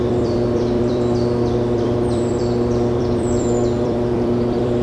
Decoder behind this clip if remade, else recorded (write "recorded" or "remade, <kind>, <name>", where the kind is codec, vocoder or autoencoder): remade, vocoder, BigVGAN v2